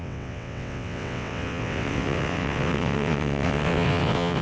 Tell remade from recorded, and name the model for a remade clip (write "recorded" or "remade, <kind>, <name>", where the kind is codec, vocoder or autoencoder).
remade, vocoder, WaveNeXt